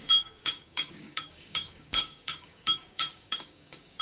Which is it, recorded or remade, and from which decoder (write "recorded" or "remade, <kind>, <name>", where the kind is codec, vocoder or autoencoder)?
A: remade, codec, DAC